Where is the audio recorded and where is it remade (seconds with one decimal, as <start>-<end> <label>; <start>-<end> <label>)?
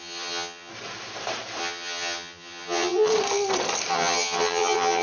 0.0-0.7 remade; 0.7-1.6 recorded; 1.6-3.1 remade; 3.1-3.9 recorded; 3.9-5.0 remade